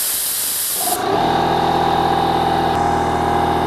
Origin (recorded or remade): recorded